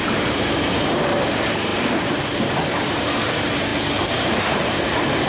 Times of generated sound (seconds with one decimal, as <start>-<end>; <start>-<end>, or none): 0.0-5.3